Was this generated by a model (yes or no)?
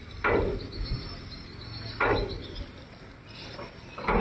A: no